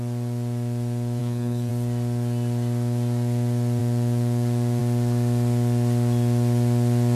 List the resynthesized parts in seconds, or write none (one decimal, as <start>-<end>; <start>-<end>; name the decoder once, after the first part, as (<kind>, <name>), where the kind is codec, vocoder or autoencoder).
1.2-1.7 (codec, SNAC)